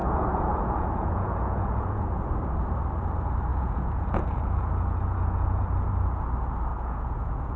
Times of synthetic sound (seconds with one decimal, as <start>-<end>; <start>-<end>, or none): 0.0-2.2; 3.5-5.9; 6.7-7.6